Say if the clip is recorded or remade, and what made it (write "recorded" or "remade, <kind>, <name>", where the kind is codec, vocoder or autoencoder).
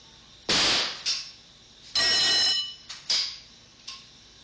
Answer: recorded